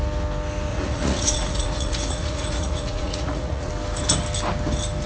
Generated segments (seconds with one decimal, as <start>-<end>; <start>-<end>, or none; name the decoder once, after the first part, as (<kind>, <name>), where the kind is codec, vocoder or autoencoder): 0.7-3.7 (vocoder, Vocos)